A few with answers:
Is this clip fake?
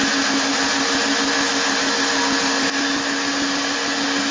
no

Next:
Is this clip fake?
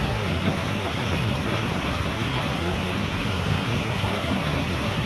yes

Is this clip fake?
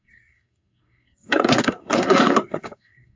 yes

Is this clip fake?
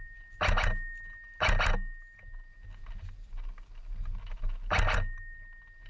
no